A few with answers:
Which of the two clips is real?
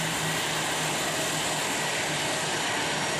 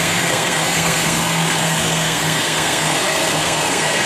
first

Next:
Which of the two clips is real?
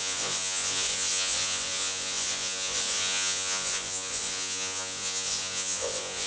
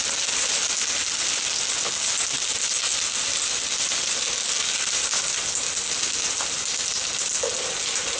second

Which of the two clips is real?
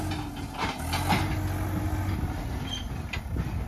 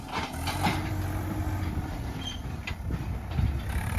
first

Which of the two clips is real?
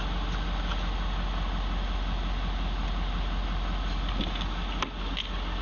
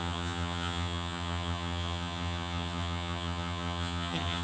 first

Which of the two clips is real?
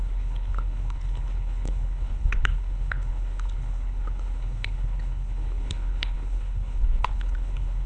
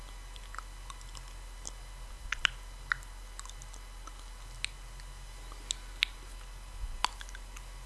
second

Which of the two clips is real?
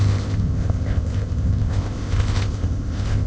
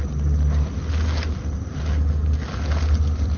second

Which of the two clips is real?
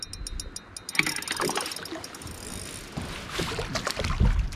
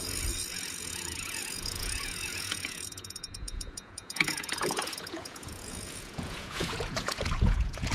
first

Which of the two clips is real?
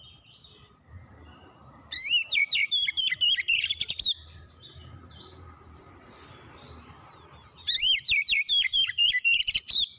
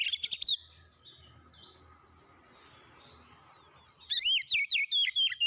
second